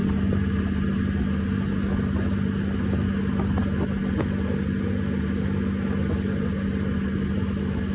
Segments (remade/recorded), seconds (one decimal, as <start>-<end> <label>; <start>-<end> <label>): 0.0-7.9 recorded